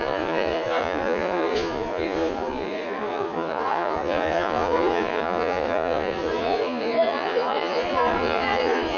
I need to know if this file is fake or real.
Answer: fake